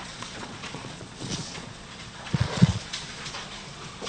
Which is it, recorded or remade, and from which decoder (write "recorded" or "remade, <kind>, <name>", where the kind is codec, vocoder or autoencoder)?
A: remade, vocoder, Vocos